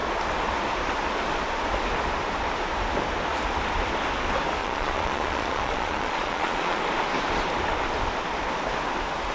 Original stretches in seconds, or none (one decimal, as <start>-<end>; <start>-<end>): 0.0-4.6; 6.8-9.3